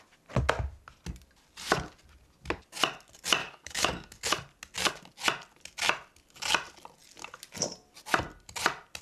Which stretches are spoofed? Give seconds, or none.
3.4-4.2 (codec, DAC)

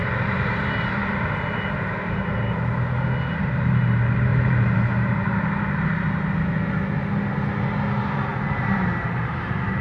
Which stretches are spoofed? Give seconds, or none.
0.0-2.2 (vocoder, BigVGAN v2); 4.3-5.6; 8.3-9.8

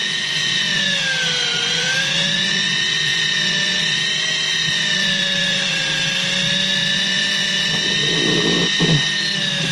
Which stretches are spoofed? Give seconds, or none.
0.0-1.0 (vocoder, Vocos); 1.5-6.1; 6.8-7.9

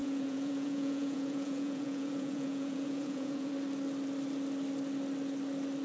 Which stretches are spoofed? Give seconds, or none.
0.0-3.5 (vocoder, Vocos)

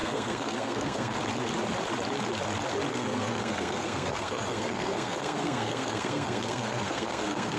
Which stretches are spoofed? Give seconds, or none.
0.0-1.2 (codec, SNAC); 2.9-7.6